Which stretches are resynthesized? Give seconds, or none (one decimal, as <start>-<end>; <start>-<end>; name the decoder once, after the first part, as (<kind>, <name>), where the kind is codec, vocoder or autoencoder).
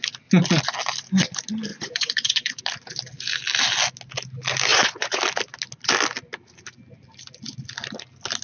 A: 1.7-2.6 (vocoder, Vocos); 4.7-5.2